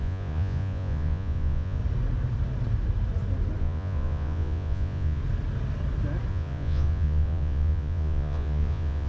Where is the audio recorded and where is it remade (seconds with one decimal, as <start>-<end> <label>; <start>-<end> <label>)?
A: 0.0-1.8 remade; 1.8-3.6 recorded; 3.6-5.2 remade; 5.2-6.3 recorded; 6.3-9.1 remade